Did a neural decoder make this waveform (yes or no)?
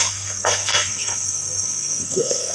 yes